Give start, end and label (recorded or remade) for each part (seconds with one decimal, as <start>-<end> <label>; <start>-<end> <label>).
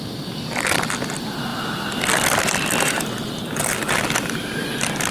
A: 0.0-5.1 recorded